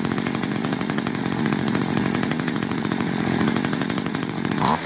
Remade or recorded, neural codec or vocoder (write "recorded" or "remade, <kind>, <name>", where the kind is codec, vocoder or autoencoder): remade, vocoder, Vocos